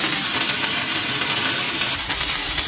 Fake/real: real